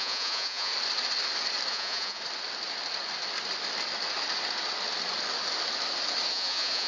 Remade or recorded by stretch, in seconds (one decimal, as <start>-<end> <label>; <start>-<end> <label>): 0.0-0.7 remade; 0.7-1.7 recorded; 1.7-2.2 remade; 2.2-6.3 recorded; 6.3-6.9 remade